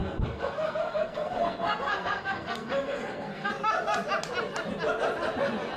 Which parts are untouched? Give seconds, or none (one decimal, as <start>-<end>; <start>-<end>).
3.5-5.8